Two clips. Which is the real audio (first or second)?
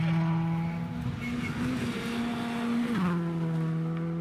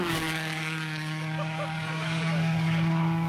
first